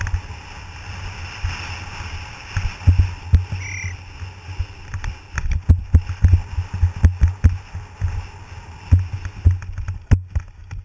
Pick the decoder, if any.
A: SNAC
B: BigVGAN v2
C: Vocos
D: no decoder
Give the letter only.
D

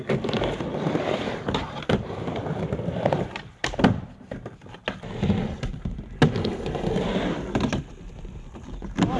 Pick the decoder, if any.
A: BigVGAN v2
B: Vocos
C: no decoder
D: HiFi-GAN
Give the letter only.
C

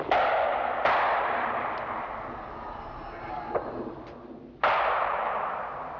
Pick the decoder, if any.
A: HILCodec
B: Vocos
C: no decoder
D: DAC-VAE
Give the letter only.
C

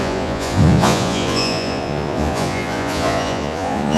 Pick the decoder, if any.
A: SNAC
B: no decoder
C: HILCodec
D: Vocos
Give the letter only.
D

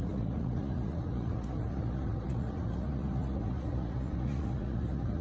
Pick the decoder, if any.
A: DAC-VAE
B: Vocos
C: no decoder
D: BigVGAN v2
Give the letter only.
B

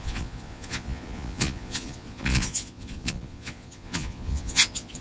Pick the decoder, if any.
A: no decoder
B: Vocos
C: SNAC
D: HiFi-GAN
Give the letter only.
B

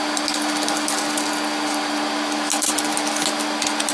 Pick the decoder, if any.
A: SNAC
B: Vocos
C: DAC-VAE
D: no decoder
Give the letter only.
D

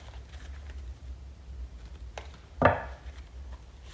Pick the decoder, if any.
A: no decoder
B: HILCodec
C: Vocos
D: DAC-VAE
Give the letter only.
A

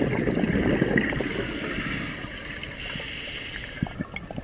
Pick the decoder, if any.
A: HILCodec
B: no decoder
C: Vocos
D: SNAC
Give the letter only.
B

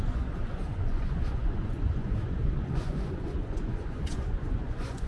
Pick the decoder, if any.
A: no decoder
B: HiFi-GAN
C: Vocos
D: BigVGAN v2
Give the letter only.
C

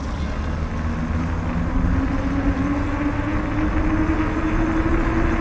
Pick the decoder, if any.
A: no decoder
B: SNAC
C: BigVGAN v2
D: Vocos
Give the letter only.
A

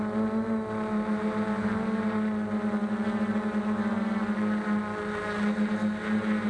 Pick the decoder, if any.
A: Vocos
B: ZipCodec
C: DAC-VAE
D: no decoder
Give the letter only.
D